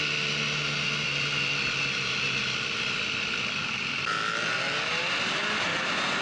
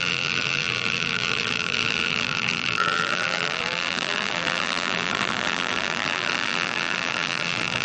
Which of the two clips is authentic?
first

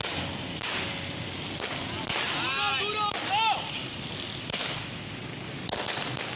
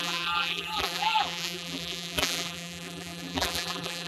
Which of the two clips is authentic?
first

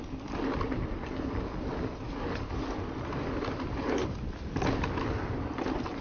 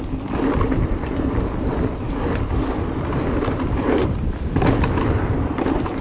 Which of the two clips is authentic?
first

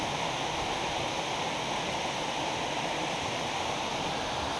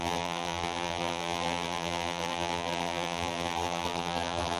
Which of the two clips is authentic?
first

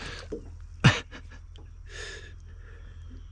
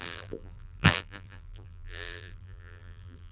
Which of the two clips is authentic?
first